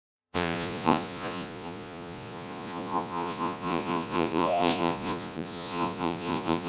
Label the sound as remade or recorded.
remade